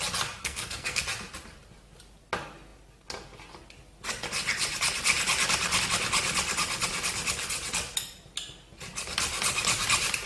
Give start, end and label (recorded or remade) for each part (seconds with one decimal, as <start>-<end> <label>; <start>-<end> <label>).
0.0-0.4 recorded; 0.4-1.0 remade; 1.0-10.3 recorded